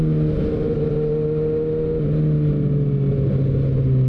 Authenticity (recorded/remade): recorded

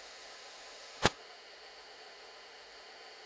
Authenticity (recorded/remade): remade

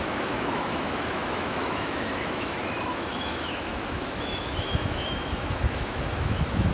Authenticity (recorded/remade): remade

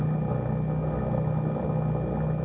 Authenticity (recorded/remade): recorded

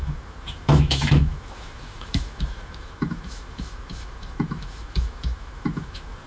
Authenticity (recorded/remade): remade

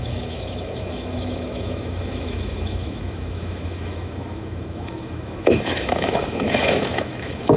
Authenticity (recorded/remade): remade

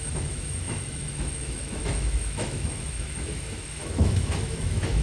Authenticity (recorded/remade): remade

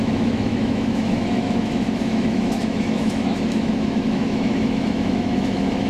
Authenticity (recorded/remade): remade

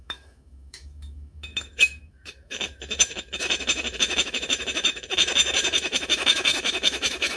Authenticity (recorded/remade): remade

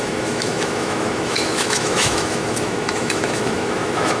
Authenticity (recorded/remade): remade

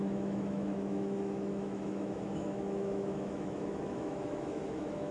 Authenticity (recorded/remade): remade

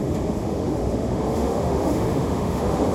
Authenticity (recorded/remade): remade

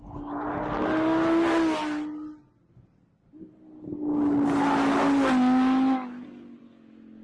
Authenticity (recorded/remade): recorded